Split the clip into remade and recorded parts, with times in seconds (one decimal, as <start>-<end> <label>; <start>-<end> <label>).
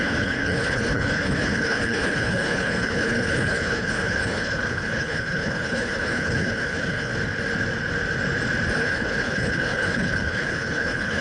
0.0-7.1 remade; 7.1-8.8 recorded; 8.8-11.2 remade